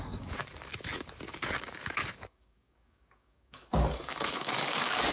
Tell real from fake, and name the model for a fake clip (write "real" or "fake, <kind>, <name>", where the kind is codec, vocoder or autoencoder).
fake, codec, DAC